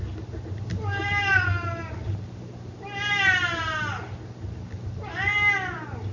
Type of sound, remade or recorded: recorded